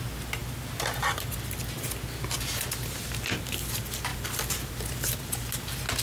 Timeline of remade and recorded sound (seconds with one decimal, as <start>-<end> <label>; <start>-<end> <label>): 0.0-4.1 recorded; 4.1-4.7 remade; 4.7-6.0 recorded